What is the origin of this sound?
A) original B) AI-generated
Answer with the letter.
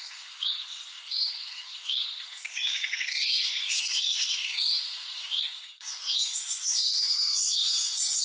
B